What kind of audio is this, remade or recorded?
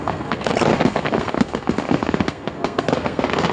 remade